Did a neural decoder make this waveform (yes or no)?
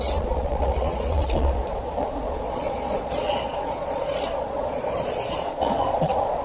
yes